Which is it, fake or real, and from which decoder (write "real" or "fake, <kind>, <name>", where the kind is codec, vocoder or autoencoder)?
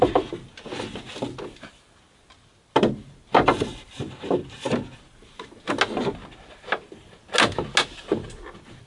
real